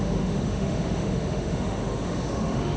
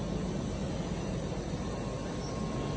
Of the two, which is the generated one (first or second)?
first